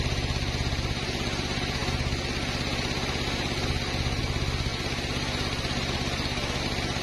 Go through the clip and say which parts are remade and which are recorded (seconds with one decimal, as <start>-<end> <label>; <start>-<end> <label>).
0.0-7.0 recorded